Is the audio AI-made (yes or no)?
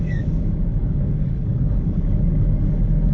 yes